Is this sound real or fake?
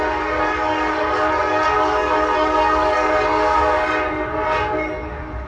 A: fake